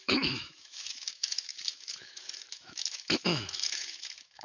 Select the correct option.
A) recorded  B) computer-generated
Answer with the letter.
B